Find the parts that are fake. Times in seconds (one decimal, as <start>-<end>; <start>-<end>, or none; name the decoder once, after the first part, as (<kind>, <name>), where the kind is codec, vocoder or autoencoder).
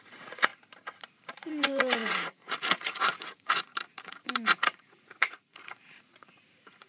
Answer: 0.0-0.5 (vocoder, Vocos); 1.4-6.9